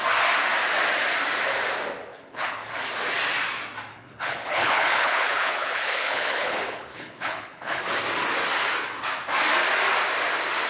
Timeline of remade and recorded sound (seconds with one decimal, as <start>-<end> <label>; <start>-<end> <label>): 0.0-2.1 recorded; 2.1-2.7 remade; 2.7-3.9 recorded; 3.9-7.8 remade; 7.8-10.7 recorded

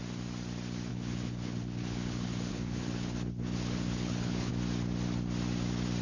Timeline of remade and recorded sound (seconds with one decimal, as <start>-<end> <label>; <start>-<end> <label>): 0.0-0.9 recorded; 0.9-4.5 remade; 4.5-6.0 recorded

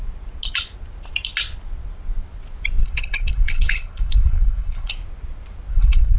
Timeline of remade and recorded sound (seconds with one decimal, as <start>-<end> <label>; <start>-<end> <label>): 0.0-2.8 recorded; 2.8-4.9 remade; 4.9-5.7 recorded; 5.7-6.2 remade

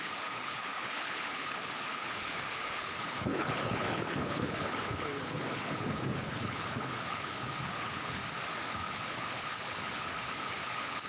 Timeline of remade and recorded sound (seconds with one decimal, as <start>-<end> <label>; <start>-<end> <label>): 0.0-8.2 remade; 8.2-8.7 recorded; 8.7-11.1 remade

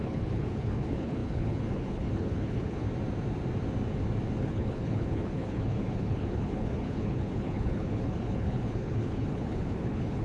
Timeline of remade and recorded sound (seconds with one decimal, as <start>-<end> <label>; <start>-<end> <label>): 0.0-2.8 remade; 2.8-4.4 recorded; 4.4-10.2 remade

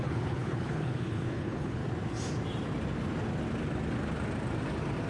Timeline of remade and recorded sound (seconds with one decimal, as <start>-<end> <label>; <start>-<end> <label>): 0.0-1.8 remade; 1.8-5.1 recorded

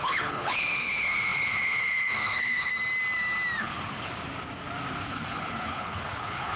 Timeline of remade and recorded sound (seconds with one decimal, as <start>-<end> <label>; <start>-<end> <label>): 0.0-2.7 remade; 2.7-3.6 recorded; 3.6-4.1 remade; 4.1-5.1 recorded; 5.1-6.6 remade